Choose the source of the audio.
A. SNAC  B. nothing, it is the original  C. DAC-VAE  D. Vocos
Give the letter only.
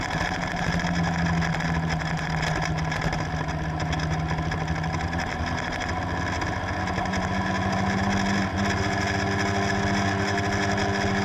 B